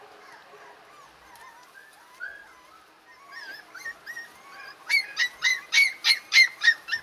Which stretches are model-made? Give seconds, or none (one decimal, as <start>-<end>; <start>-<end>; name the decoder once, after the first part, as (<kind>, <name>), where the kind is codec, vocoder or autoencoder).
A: 5.5-7.0 (vocoder, BigVGAN v2)